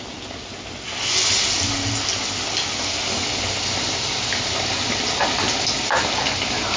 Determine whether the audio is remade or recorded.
recorded